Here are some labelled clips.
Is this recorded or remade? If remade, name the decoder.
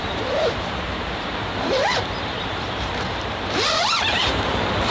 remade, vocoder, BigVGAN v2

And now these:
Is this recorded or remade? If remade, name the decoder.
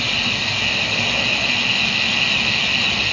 recorded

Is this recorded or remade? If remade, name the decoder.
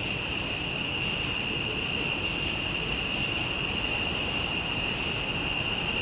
remade, vocoder, BigVGAN v2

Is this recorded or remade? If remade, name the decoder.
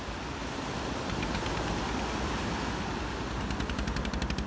recorded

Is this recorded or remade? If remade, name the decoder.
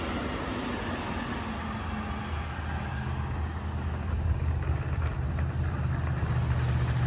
recorded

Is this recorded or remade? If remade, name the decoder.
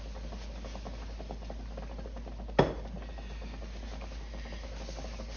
recorded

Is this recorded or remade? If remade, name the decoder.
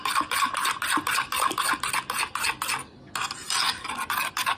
recorded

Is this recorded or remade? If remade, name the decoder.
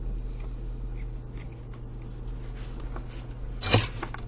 recorded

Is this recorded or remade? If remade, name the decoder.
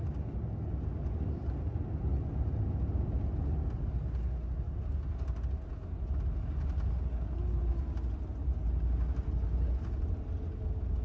recorded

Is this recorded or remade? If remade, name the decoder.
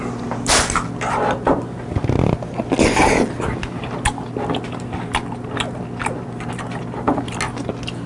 recorded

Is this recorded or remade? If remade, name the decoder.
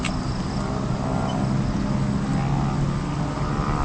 recorded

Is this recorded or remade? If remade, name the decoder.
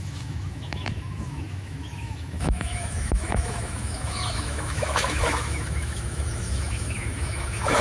remade, autoencoder, DAC-VAE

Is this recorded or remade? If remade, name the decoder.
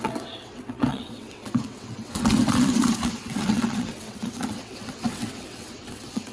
remade, vocoder, WaveNeXt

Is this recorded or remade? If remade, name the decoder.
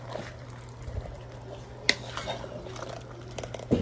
recorded